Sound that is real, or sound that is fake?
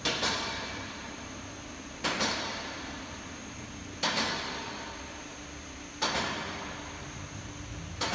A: fake